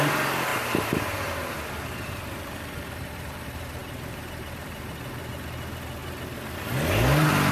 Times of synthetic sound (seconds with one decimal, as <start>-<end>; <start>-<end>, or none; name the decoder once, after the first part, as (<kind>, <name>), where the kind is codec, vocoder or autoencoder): 0.5-3.4 (vocoder, BigVGAN v2); 3.8-5.4